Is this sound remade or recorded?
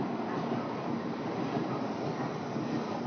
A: recorded